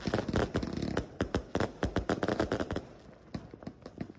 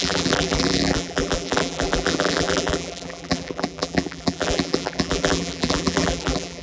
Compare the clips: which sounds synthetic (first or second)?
second